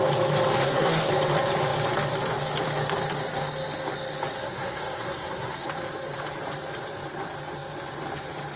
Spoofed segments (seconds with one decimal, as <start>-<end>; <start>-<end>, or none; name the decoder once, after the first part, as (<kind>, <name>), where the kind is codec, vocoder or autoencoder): 0.6-1.1 (codec, SNAC); 4.4-5.7